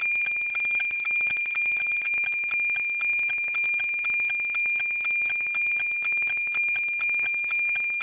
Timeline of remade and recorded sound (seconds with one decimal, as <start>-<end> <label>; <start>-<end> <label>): 0.0-0.5 recorded; 0.5-2.1 remade; 2.1-8.0 recorded